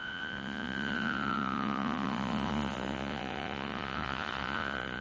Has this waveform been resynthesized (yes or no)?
yes